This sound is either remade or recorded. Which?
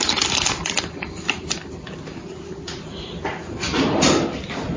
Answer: remade